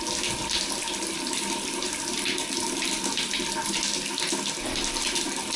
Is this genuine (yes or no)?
yes